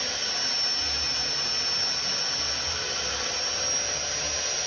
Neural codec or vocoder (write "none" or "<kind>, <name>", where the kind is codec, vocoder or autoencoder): none